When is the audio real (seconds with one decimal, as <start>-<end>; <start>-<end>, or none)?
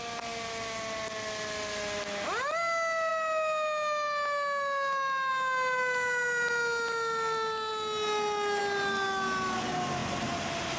0.0-10.8